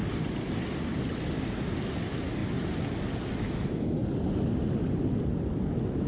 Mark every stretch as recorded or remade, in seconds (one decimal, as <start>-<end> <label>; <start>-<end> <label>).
0.0-6.1 recorded